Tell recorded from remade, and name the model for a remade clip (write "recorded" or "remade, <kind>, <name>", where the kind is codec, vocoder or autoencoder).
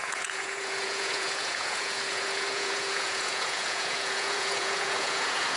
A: remade, vocoder, Vocos